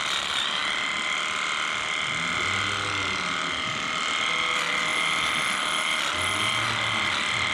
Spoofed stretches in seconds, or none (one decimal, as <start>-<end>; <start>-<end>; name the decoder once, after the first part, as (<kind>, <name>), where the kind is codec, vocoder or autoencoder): none